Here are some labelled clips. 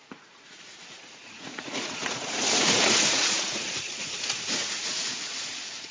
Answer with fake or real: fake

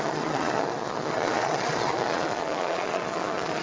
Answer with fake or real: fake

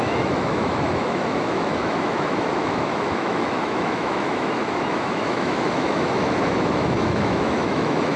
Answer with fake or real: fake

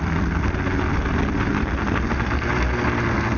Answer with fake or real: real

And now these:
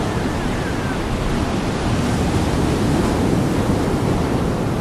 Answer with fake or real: real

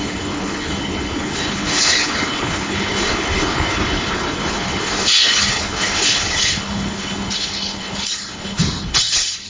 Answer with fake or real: fake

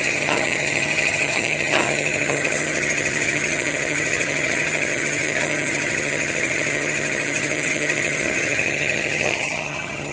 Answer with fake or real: fake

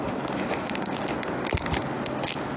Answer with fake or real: real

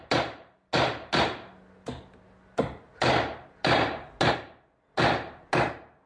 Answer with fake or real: real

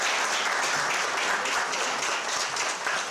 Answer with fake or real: real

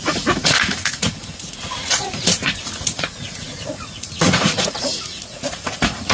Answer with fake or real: fake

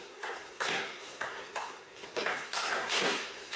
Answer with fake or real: fake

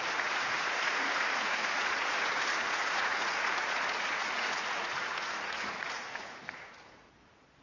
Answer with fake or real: fake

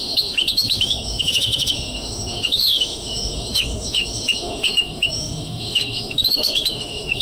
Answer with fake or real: fake